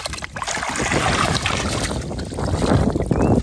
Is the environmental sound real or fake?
real